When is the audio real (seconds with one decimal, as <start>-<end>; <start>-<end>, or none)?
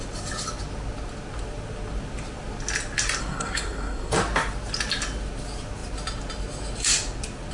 0.0-3.2; 4.1-7.5